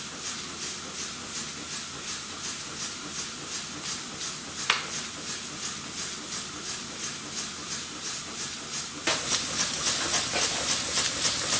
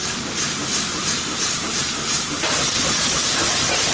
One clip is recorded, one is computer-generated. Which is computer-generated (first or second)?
second